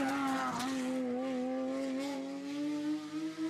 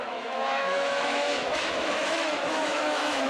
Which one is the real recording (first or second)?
first